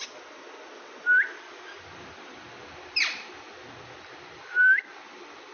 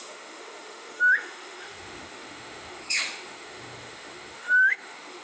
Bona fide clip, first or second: first